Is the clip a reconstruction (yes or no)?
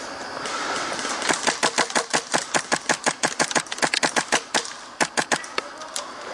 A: no